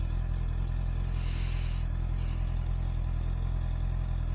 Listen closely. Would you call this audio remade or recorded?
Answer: recorded